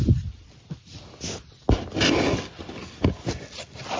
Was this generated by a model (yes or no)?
no